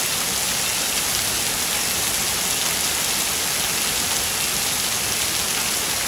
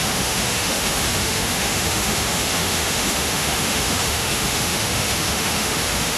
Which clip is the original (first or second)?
first